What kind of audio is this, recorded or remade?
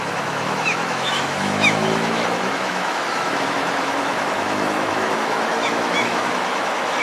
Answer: remade